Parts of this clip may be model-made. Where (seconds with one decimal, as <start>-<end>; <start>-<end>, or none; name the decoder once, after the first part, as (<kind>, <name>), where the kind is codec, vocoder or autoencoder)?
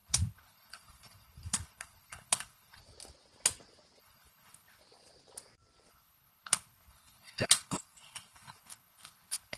0.0-2.8 (codec, HILCodec); 4.0-4.8; 5.9-9.6